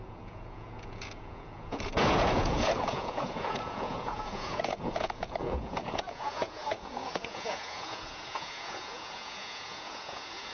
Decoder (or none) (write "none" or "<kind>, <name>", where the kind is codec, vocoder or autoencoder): vocoder, Vocos